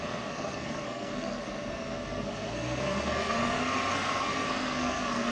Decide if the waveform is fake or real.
fake